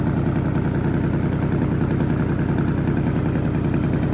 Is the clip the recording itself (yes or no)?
yes